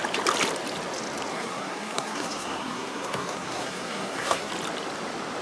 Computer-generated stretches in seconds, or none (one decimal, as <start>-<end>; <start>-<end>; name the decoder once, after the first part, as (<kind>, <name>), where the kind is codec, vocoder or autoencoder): 1.3-4.5 (codec, SNAC)